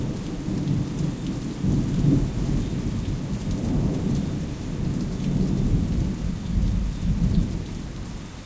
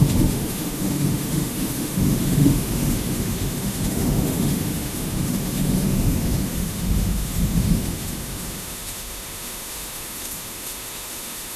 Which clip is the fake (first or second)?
second